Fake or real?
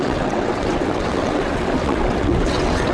fake